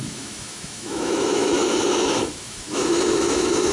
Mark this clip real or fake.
fake